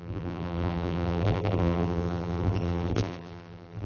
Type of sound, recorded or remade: remade